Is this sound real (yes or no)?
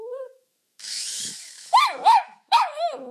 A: no